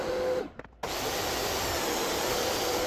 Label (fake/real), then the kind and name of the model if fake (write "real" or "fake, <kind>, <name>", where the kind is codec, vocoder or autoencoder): real